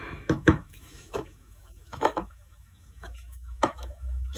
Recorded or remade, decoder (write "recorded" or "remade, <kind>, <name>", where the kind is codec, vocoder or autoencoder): remade, autoencoder, DAC-VAE